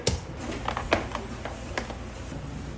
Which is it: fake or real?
real